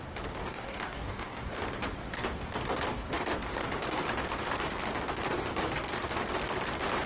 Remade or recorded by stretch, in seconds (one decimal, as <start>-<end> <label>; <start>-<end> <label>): 0.0-0.4 recorded; 0.4-1.6 remade; 1.6-7.1 recorded